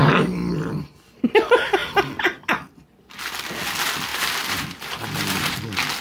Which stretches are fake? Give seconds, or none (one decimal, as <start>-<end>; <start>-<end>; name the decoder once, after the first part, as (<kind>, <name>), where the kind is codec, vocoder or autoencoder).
0.0-0.9 (vocoder, BigVGAN v2); 4.1-5.6